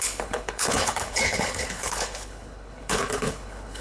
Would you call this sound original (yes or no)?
no